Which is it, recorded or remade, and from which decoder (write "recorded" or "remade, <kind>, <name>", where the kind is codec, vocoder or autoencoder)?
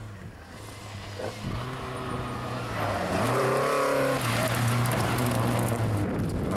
recorded